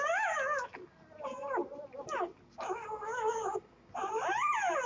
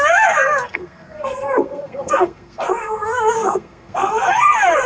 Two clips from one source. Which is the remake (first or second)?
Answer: second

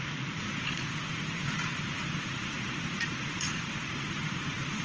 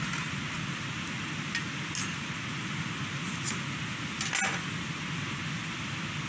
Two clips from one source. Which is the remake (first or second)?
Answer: first